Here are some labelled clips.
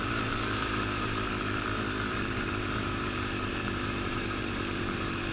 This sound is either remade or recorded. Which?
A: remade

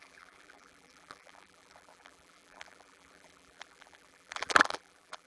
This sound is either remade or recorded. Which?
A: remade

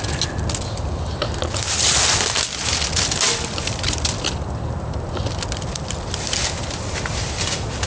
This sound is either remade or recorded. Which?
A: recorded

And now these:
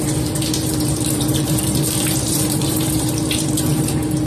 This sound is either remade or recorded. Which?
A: remade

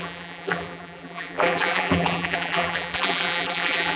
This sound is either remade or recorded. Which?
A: remade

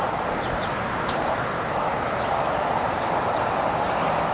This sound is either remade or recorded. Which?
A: recorded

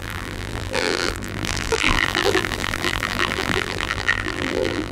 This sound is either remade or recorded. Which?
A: remade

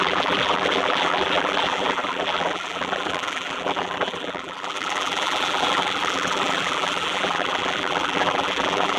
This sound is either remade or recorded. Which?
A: remade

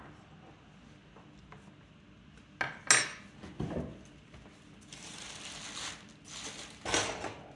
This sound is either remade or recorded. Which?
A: recorded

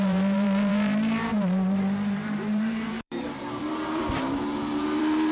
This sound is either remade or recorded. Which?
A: remade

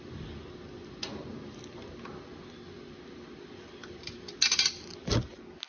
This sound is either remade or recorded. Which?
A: recorded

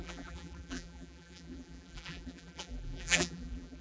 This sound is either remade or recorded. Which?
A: remade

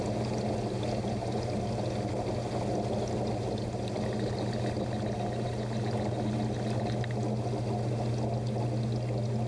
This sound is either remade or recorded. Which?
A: recorded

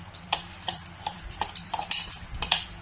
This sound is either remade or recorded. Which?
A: remade